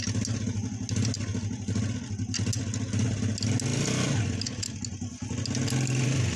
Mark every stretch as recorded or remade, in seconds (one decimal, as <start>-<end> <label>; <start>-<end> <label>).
0.0-6.4 recorded